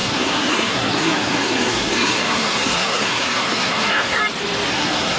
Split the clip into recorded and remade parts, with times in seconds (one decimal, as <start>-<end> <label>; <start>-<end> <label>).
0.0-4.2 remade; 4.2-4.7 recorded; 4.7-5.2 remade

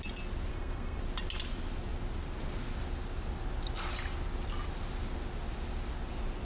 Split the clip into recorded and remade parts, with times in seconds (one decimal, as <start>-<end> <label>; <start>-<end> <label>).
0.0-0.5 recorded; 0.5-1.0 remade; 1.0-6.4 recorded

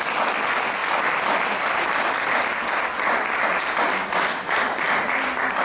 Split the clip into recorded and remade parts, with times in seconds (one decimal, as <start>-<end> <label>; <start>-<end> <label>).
0.0-5.6 recorded